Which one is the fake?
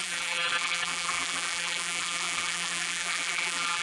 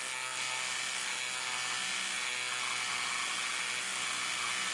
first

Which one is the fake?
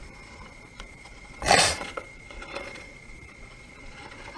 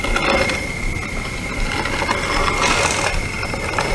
first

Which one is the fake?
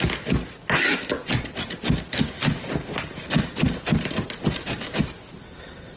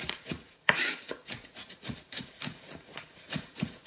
second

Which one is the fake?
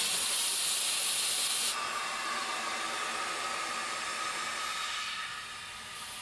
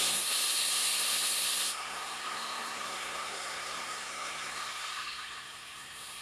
second